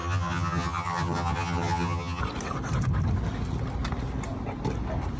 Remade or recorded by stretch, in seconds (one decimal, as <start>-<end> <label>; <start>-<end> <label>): 0.0-2.2 remade; 2.2-5.2 recorded